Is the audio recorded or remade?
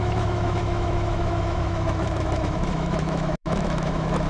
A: remade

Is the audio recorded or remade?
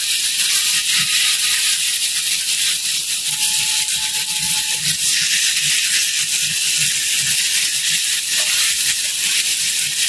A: recorded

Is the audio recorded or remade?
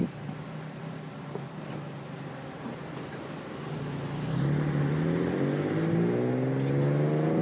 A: recorded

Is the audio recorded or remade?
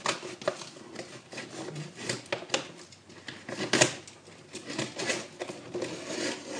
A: recorded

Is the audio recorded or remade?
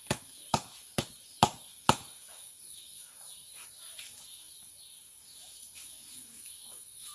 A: remade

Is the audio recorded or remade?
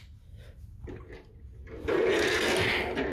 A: recorded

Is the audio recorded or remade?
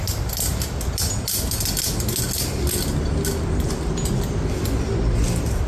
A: recorded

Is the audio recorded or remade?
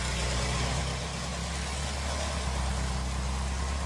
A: recorded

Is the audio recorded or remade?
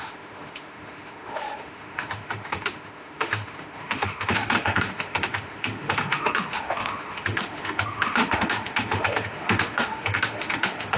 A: remade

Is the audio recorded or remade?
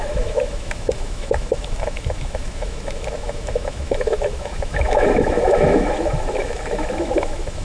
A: remade